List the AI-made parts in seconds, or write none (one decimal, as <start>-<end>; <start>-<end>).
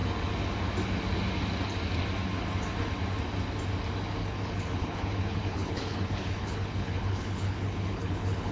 4.2-8.5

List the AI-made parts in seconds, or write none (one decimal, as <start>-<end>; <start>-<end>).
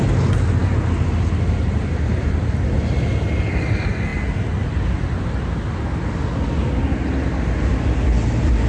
none